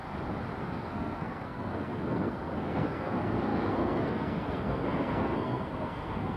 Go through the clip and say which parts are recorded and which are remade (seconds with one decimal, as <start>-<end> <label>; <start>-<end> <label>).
0.0-0.6 recorded; 0.6-6.4 remade

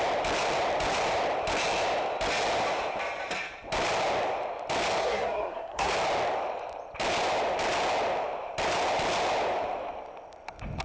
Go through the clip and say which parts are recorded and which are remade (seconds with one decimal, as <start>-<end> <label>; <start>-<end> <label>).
0.0-5.0 recorded; 5.0-5.9 remade; 5.9-10.8 recorded

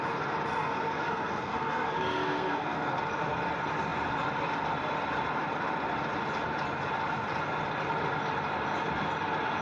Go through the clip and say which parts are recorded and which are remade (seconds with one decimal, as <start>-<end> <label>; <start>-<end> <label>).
0.0-0.5 recorded; 0.5-3.0 remade; 3.0-9.6 recorded

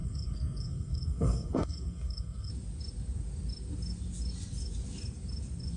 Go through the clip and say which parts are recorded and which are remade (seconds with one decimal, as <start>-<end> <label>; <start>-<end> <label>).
0.0-2.5 remade; 2.5-5.8 recorded

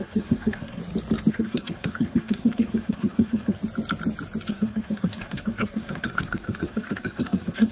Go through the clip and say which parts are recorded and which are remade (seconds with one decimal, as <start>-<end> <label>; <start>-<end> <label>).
0.0-0.8 remade; 0.8-1.3 recorded; 1.3-3.6 remade; 3.6-4.5 recorded; 4.5-7.7 remade

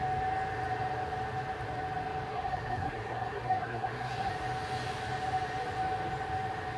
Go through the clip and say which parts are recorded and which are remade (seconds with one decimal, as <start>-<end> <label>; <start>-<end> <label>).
0.0-2.3 recorded; 2.3-4.3 remade; 4.3-6.8 recorded